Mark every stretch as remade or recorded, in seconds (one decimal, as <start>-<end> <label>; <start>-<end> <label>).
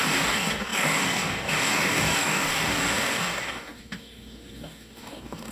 0.0-5.5 remade